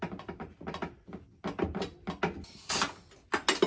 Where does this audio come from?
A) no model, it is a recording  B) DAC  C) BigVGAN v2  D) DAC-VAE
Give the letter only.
A